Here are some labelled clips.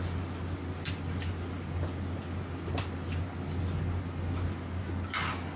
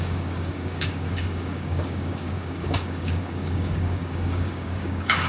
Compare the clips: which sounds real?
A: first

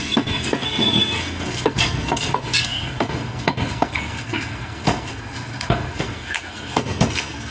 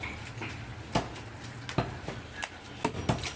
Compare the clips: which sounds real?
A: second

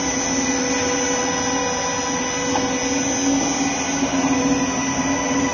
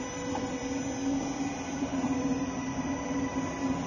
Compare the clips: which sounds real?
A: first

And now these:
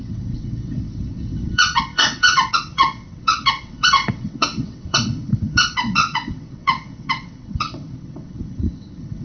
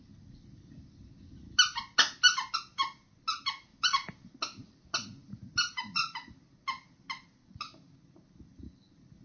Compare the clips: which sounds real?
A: second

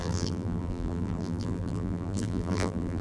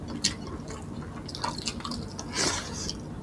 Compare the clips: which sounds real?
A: second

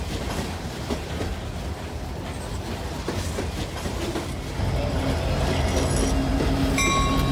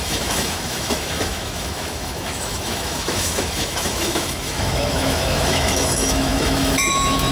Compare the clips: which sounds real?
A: first